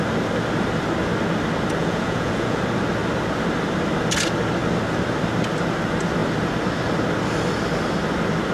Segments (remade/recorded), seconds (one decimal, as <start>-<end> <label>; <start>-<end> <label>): 0.0-1.8 recorded; 1.8-2.6 remade; 2.6-8.5 recorded